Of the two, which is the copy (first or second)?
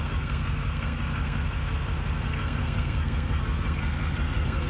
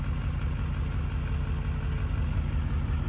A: first